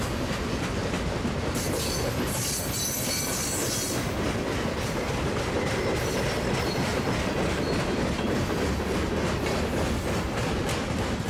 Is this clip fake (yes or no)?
no